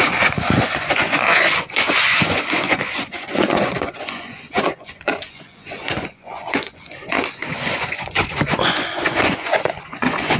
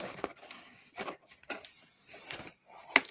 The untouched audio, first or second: second